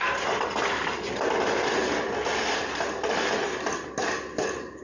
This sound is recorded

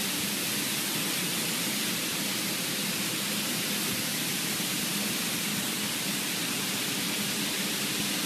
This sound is recorded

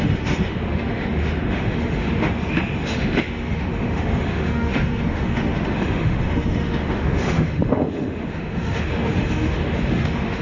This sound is remade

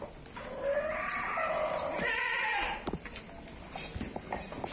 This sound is recorded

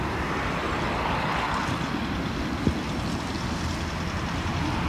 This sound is recorded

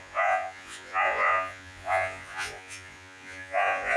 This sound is remade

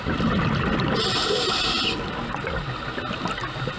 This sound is recorded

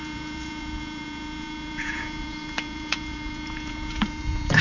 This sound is remade